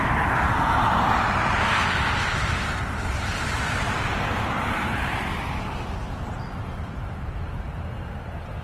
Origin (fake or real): fake